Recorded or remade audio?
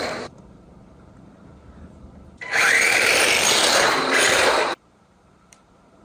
remade